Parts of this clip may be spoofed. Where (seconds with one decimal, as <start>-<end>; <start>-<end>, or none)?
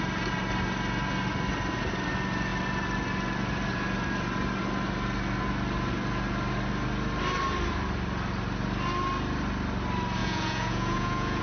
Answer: 10.2-11.4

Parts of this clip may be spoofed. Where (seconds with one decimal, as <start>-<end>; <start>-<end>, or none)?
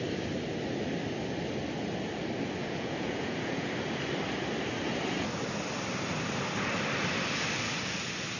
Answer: 2.6-3.7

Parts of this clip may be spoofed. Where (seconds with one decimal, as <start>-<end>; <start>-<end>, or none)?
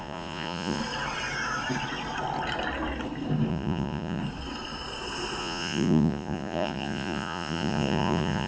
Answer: 0.0-0.8; 3.5-4.2; 5.4-8.5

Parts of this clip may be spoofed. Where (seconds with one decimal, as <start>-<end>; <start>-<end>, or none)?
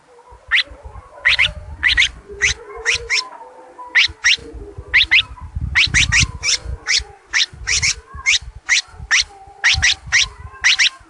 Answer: 1.0-3.1; 6.6-9.0